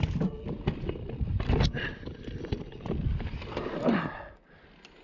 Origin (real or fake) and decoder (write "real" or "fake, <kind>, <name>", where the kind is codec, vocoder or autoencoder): real